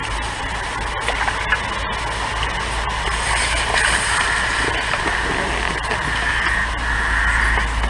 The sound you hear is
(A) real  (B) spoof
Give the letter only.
A